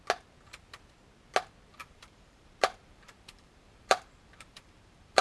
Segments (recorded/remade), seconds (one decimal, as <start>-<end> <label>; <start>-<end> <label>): 0.0-1.8 recorded; 1.8-5.2 remade